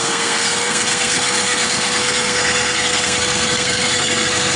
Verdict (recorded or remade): remade